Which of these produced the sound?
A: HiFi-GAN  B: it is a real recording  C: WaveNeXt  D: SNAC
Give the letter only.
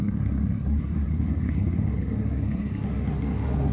D